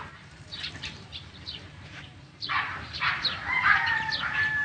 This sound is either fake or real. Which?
fake